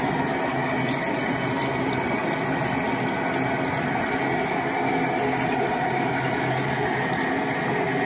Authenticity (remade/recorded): recorded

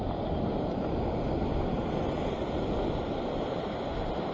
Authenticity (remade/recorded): recorded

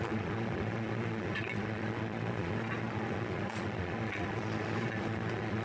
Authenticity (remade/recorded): remade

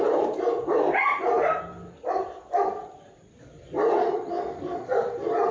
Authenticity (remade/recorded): recorded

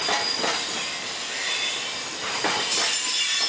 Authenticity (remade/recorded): recorded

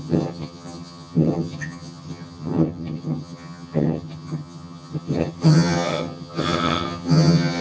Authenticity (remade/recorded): remade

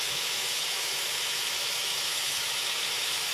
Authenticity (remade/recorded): remade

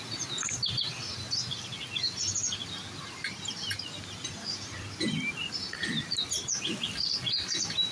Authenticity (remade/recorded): recorded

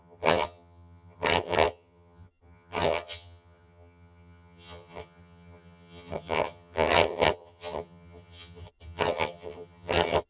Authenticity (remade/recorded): remade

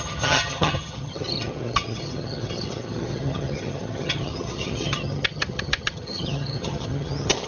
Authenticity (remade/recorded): remade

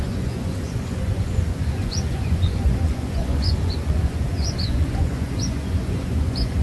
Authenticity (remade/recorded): remade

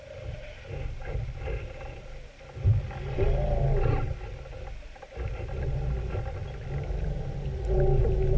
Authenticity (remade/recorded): recorded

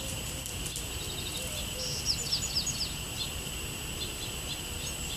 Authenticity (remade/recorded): recorded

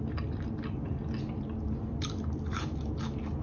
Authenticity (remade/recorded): recorded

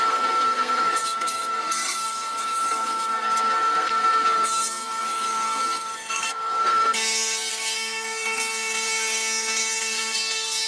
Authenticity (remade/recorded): remade